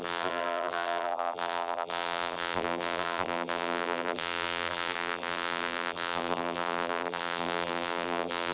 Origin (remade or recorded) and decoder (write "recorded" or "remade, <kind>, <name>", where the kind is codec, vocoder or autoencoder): remade, vocoder, BigVGAN v2